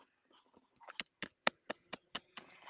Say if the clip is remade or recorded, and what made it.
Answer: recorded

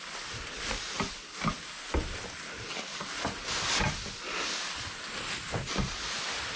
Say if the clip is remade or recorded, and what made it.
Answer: recorded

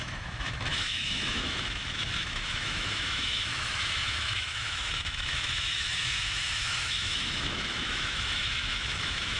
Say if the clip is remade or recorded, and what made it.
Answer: remade, autoencoder, DAC-VAE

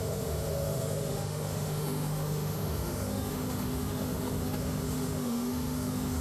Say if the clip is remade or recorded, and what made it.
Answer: remade, autoencoder, DAC-VAE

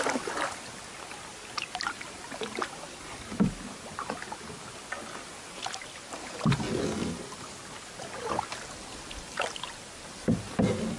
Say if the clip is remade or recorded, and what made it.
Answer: recorded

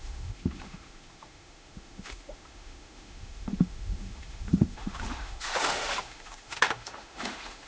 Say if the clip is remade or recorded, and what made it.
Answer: remade, autoencoder, DAC-VAE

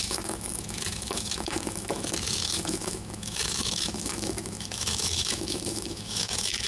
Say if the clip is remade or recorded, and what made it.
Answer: remade, autoencoder, DAC-VAE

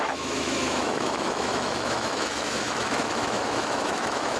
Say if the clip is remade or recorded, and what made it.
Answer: remade, autoencoder, DAC-VAE